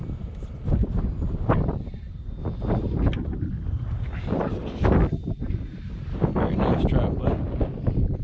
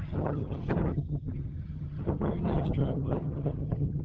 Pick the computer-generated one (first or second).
second